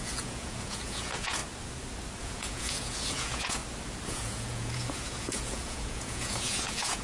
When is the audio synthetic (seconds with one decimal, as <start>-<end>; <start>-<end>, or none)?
0.0-1.4; 2.2-3.6; 4.1-7.0